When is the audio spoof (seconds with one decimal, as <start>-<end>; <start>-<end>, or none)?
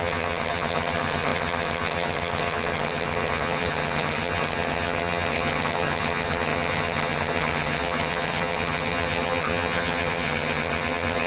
0.0-11.3